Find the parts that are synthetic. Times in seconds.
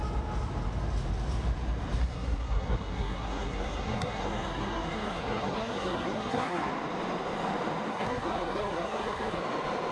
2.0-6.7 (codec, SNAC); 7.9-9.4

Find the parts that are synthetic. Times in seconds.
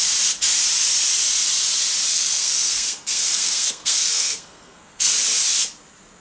2.1-5.1 (codec, SNAC)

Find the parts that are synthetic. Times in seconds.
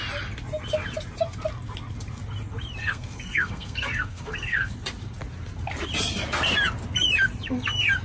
2.8-4.7 (codec, SNAC)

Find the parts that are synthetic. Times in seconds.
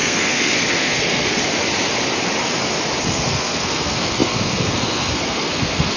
0.0-1.4 (codec, SNAC); 3.0-6.0